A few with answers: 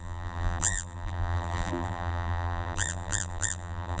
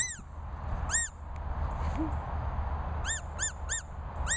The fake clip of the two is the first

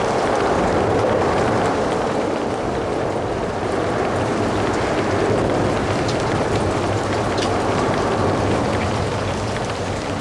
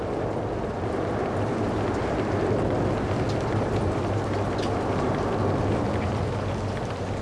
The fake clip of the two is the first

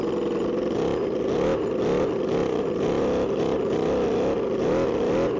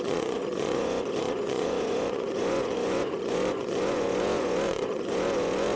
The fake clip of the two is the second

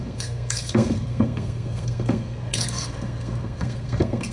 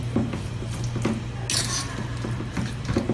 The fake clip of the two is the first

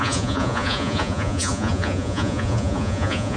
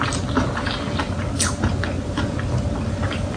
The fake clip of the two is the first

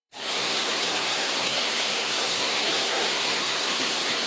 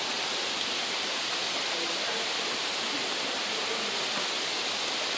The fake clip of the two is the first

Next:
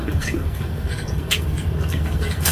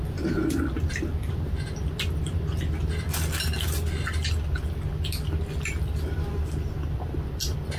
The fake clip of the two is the first